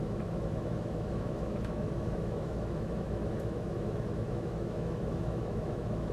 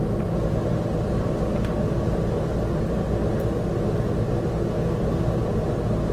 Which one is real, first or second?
second